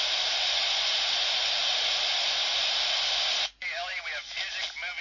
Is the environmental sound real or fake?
real